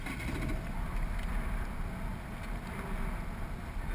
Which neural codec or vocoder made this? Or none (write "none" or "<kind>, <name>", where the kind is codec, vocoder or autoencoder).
none